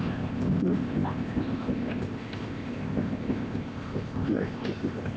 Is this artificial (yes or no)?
yes